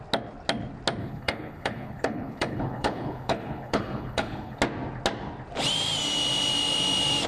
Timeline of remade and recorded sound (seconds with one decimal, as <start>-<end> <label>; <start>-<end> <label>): 0.0-1.0 recorded; 1.0-4.6 remade; 4.6-7.3 recorded